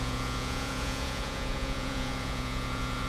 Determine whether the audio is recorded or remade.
remade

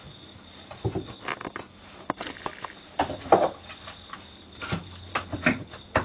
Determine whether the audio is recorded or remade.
recorded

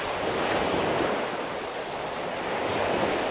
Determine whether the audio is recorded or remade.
recorded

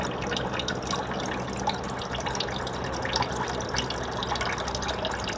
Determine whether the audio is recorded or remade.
recorded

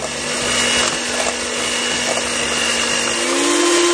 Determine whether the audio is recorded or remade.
recorded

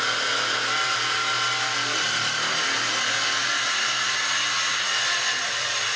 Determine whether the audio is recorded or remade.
recorded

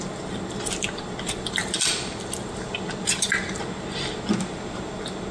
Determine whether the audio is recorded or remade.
recorded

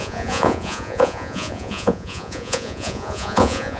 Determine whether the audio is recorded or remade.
remade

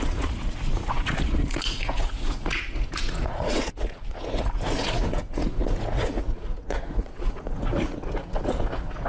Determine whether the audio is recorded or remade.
remade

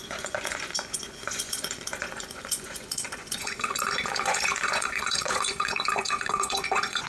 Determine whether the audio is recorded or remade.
remade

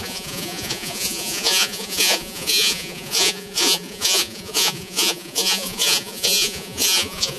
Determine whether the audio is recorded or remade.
remade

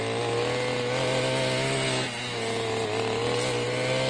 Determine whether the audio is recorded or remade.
recorded